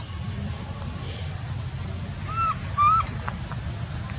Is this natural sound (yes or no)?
yes